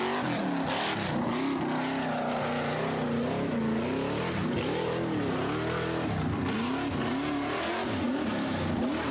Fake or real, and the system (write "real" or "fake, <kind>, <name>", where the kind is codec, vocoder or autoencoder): real